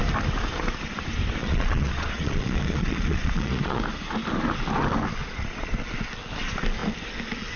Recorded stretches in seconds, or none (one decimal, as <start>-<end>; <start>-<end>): 0.0-1.4; 3.8-5.2; 5.8-7.6